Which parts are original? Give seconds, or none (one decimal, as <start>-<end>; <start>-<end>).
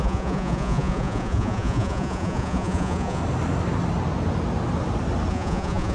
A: 3.2-5.3